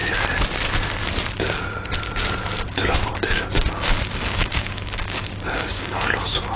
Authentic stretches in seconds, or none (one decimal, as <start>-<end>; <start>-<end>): 0.0-3.1; 6.0-6.6